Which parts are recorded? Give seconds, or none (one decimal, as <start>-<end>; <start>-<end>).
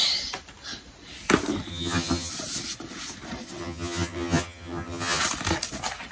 0.0-1.7; 2.3-3.6; 5.2-6.1